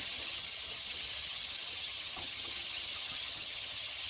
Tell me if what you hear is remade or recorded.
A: remade